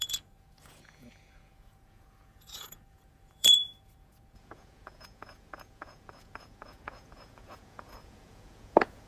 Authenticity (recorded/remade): remade